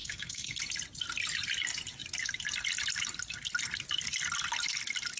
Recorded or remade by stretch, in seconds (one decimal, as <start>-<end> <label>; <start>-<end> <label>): 0.0-0.6 remade; 0.6-5.2 recorded